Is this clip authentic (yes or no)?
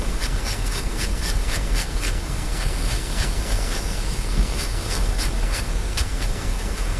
no